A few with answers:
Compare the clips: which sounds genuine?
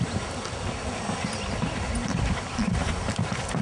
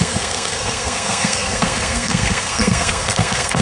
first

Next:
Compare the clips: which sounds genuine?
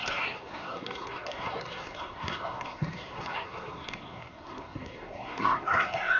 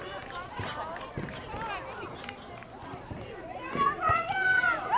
second